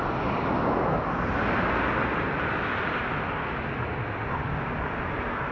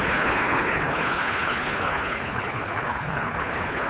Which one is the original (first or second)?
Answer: first